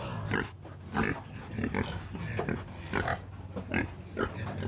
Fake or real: real